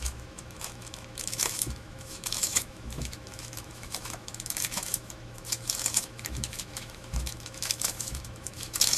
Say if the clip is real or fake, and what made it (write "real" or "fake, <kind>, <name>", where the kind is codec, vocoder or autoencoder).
fake, autoencoder, DAC-VAE